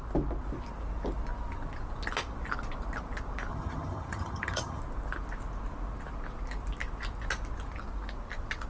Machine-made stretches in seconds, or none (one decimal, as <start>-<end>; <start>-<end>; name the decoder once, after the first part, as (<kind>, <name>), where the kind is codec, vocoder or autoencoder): 3.5-4.8 (vocoder, HiFi-GAN)